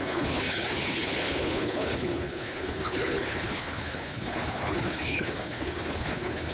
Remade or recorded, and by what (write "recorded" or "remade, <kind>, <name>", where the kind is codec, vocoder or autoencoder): remade, codec, HILCodec